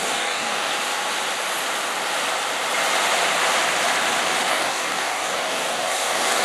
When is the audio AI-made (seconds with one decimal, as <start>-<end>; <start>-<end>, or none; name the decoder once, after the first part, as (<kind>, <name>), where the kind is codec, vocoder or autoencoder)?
0.0-0.7 (codec, DAC); 4.5-6.4